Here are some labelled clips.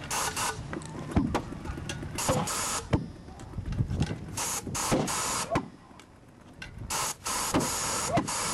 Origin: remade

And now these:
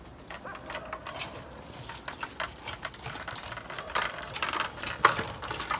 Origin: recorded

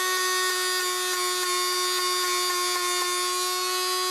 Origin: recorded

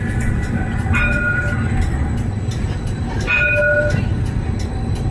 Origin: recorded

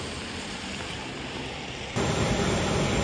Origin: remade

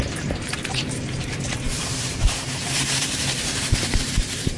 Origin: remade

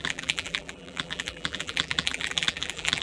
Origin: remade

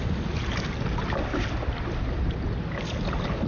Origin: recorded